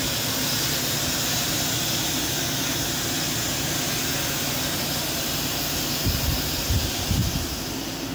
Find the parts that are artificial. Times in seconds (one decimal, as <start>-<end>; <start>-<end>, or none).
none